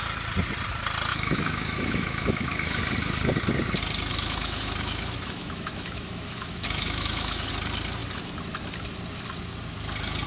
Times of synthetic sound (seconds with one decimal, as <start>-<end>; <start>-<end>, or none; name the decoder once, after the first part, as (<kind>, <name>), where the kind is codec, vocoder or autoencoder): 1.1-2.8 (autoencoder, DAC-VAE); 4.1-7.5